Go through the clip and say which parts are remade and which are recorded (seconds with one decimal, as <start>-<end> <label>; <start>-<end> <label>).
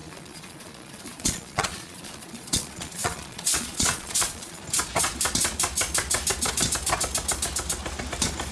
0.0-4.6 remade; 4.6-8.5 recorded